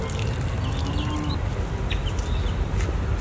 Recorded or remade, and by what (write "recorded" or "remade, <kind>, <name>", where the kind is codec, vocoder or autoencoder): recorded